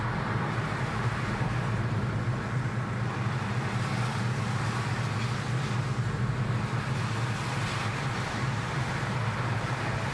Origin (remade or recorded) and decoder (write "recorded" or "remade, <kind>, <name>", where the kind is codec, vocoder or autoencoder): recorded